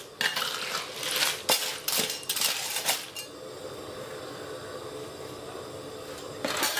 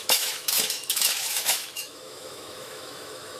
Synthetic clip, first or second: second